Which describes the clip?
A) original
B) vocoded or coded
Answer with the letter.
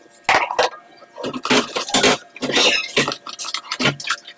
A